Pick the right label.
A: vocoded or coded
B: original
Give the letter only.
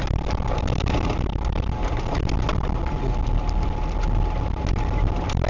B